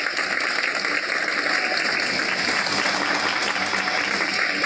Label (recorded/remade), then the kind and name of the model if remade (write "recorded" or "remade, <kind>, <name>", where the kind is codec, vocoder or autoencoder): recorded